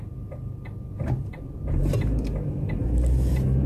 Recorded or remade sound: recorded